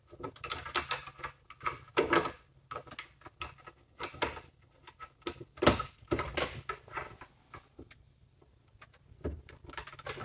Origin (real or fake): real